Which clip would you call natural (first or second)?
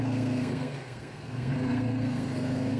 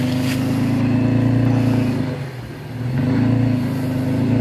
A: second